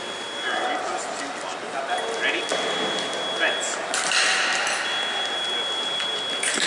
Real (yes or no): yes